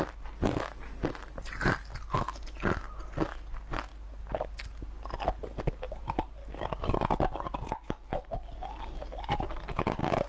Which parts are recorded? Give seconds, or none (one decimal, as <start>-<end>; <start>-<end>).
0.0-10.3